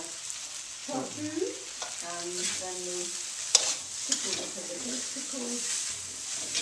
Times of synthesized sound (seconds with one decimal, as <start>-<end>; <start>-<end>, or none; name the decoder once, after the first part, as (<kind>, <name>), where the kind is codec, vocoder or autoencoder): none